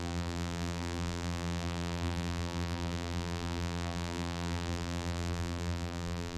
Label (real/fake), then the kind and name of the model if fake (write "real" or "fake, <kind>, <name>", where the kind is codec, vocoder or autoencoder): fake, vocoder, BigVGAN v2